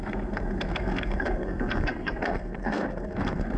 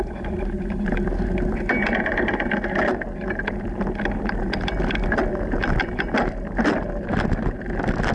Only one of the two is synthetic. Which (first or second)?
first